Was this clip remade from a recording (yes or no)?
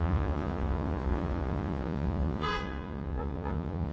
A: yes